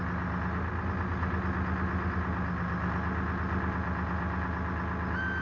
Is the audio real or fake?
real